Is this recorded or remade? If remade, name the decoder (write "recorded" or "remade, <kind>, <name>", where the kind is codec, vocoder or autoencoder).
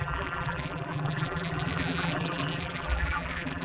remade, vocoder, BigVGAN v2